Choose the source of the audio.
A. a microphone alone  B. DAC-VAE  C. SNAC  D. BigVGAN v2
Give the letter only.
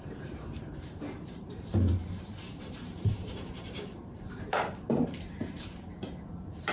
D